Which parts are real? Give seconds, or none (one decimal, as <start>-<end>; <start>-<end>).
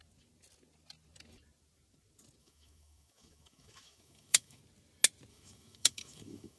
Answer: 0.0-2.4; 4.6-5.3